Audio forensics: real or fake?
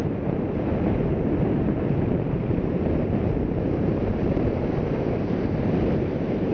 fake